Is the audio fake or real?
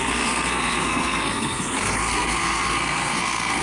fake